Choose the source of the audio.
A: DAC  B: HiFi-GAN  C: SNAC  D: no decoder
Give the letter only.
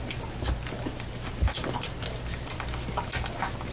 D